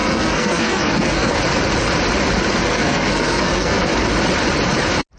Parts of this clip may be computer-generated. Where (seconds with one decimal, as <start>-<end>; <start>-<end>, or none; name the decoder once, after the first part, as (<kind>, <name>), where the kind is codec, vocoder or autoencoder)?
0.0-1.3 (codec, SNAC); 2.7-3.9